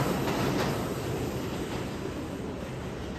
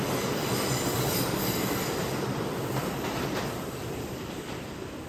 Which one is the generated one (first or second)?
second